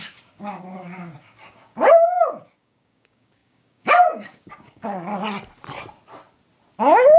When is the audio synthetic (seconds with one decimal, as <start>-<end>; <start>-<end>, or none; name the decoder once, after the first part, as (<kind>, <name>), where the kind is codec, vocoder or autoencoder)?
0.0-5.1 (codec, DAC); 6.8-7.2